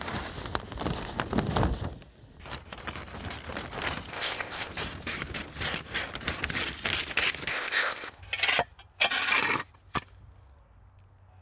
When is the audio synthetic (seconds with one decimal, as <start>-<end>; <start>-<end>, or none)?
4.1-4.7; 7.5-8.2